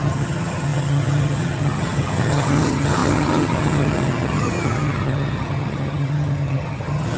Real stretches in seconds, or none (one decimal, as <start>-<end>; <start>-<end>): none